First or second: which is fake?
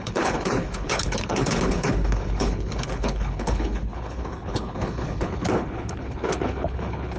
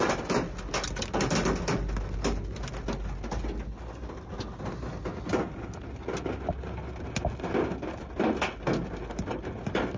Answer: first